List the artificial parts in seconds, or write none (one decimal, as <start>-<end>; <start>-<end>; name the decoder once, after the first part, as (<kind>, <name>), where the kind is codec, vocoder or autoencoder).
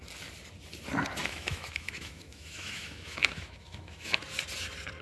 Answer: 1.2-4.2 (autoencoder, DAC-VAE)